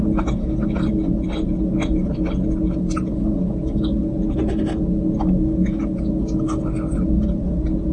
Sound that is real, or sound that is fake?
real